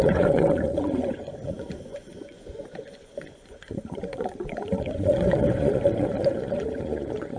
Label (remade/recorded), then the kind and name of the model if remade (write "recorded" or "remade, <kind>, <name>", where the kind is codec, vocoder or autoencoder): remade, vocoder, Vocos